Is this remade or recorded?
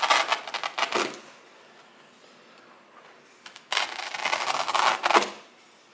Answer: recorded